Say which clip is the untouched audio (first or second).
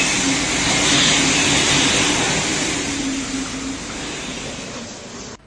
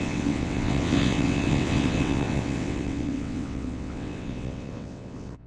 first